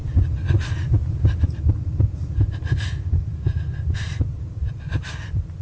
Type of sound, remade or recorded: recorded